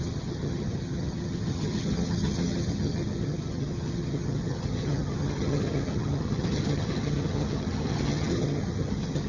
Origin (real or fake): fake